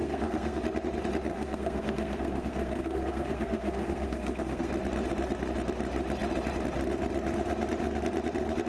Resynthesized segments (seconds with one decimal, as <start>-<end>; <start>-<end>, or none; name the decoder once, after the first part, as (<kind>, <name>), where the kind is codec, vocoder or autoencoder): 0.0-0.6 (codec, SNAC); 1.3-4.7